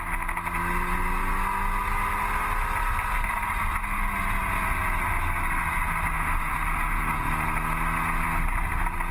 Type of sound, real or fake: real